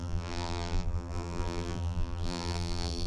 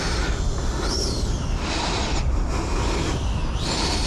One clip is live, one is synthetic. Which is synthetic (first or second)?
first